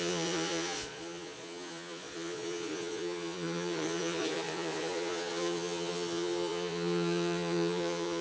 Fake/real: fake